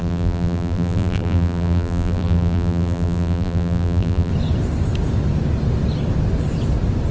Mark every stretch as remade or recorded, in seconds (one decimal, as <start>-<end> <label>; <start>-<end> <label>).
0.0-4.3 remade; 4.3-7.1 recorded